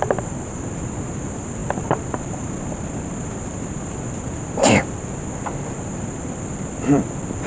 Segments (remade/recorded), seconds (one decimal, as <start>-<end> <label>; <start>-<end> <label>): 0.0-7.5 remade